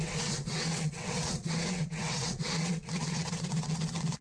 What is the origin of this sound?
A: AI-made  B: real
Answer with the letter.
A